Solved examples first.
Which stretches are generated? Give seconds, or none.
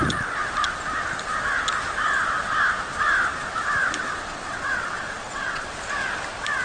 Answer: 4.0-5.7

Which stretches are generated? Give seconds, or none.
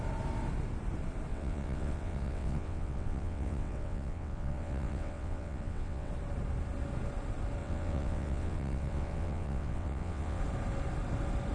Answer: 1.3-6.1; 7.6-10.4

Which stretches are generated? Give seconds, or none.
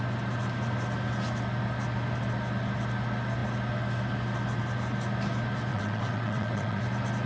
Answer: 5.7-6.8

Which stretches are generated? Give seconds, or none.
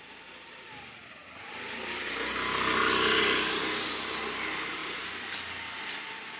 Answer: none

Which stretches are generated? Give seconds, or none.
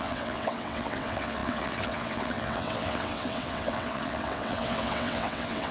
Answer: 0.0-5.7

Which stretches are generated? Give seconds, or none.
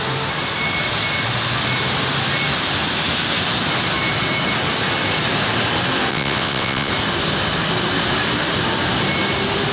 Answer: 6.1-6.9